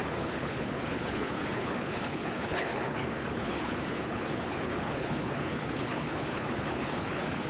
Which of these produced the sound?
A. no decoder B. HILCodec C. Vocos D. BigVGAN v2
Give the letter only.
B